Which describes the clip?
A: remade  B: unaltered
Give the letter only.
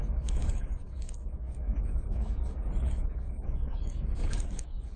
A